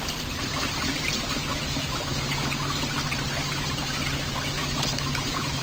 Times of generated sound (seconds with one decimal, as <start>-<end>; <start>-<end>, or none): 1.5-2.1; 4.6-5.6